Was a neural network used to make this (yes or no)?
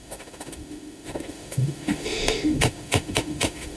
yes